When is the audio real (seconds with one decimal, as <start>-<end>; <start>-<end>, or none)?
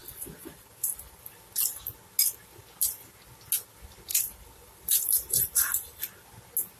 1.4-4.1; 6.0-6.8